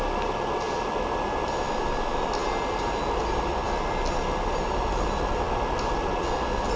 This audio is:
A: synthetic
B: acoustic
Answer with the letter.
B